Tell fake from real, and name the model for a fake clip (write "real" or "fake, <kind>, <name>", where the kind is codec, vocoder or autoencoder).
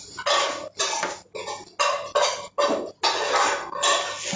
real